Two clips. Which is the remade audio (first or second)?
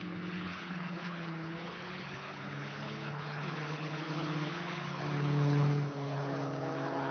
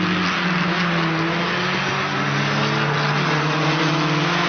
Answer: first